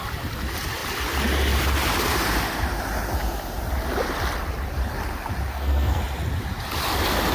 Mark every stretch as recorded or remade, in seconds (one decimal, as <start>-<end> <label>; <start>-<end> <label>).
0.0-5.5 recorded; 5.5-6.0 remade; 6.0-7.3 recorded